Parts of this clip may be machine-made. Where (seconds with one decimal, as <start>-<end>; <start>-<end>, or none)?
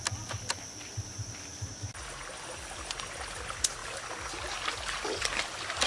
none